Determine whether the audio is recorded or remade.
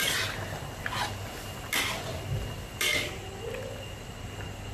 recorded